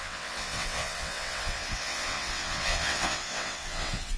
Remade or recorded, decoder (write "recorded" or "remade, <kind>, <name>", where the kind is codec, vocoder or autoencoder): remade, vocoder, WaveNeXt